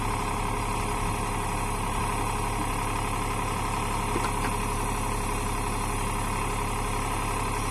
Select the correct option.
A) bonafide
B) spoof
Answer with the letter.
A